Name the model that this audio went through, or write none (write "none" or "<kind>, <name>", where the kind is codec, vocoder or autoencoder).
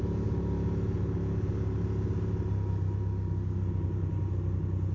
none